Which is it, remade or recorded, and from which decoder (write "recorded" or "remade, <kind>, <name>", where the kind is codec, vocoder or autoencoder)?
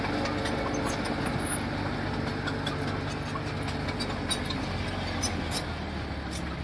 recorded